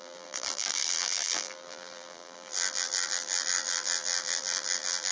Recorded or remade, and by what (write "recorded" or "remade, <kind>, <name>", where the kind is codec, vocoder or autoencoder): remade, vocoder, BigVGAN v2